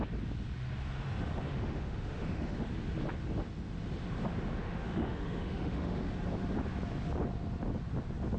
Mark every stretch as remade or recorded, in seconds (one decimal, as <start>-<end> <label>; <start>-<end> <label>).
0.0-1.5 recorded; 1.5-2.7 remade; 2.7-4.6 recorded; 4.6-6.0 remade; 6.0-8.4 recorded

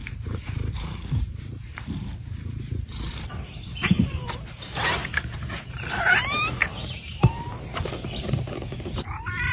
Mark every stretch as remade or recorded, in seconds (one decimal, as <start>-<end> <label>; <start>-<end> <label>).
0.0-9.5 remade

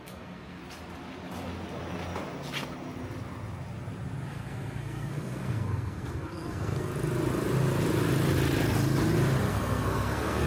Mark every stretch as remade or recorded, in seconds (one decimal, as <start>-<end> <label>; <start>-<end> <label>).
0.0-0.6 remade; 0.6-4.3 recorded; 4.3-6.9 remade; 6.9-9.5 recorded; 9.5-10.5 remade